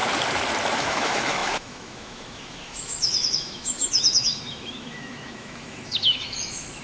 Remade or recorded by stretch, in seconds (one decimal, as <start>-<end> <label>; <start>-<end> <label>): 0.0-0.8 recorded; 0.8-6.8 remade